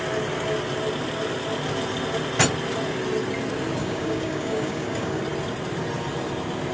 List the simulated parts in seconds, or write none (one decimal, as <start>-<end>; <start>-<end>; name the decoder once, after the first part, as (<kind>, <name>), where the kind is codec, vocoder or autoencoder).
3.8-5.2 (codec, DAC)